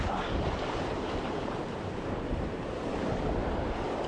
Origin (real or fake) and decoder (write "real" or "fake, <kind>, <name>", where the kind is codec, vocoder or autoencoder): fake, vocoder, BigVGAN v2